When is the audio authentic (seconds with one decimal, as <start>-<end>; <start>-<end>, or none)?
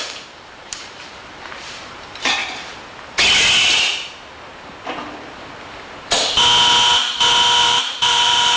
2.4-7.6